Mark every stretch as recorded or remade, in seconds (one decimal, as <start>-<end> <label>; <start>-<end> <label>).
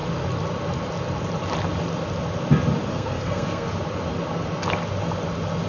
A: 0.0-2.9 recorded; 2.9-3.7 remade; 3.7-5.7 recorded